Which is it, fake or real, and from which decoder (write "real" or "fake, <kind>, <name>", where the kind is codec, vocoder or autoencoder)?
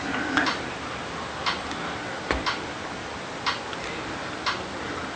real